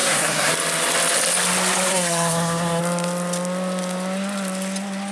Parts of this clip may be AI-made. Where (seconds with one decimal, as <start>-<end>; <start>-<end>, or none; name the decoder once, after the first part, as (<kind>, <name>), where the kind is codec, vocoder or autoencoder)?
0.0-0.5 (codec, SNAC); 1.9-2.8